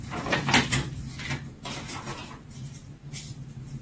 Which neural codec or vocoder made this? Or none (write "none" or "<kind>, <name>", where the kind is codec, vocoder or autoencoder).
vocoder, BigVGAN v2